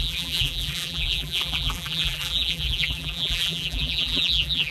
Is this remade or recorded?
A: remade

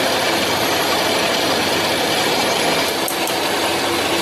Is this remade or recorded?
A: recorded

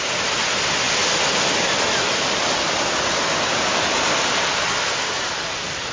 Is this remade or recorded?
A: remade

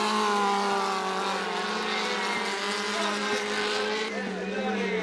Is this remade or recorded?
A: recorded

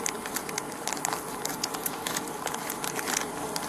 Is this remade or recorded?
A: recorded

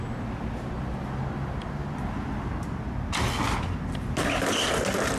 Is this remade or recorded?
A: recorded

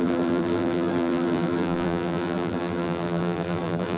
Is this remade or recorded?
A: remade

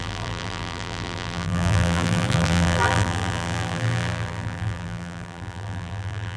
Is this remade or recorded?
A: remade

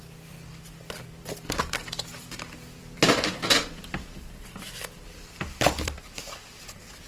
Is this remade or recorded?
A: remade